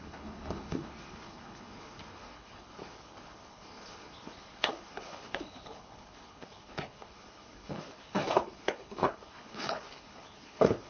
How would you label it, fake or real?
fake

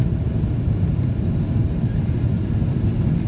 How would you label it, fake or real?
real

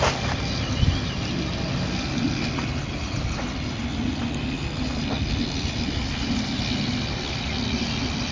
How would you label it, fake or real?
real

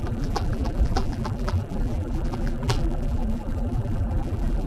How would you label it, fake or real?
fake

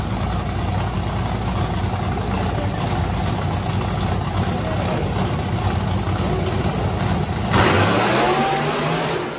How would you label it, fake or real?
real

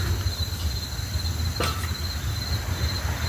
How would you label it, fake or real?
real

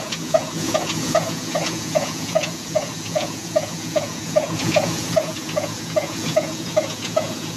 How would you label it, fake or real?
fake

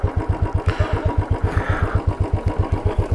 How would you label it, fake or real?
real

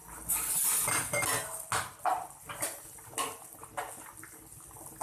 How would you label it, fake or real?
real